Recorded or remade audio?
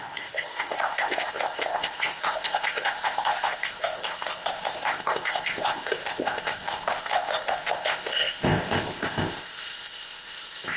remade